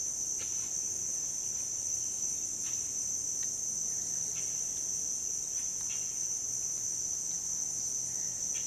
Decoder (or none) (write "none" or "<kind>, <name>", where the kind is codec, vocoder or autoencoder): none